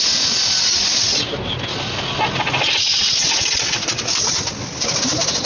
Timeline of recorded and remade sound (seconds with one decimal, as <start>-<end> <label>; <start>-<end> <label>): 0.0-5.5 recorded